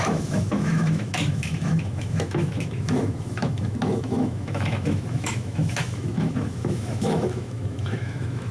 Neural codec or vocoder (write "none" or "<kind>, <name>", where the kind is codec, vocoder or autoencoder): autoencoder, DAC-VAE